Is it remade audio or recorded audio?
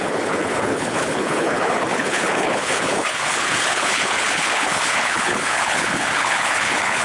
remade